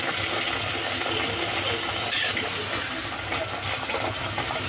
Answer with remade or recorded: recorded